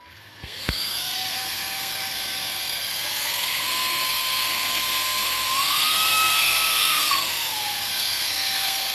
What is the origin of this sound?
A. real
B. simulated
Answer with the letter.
B